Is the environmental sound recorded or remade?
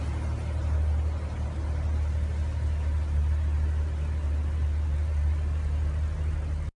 recorded